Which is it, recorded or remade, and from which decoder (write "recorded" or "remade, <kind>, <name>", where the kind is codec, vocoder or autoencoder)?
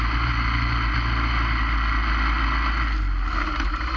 recorded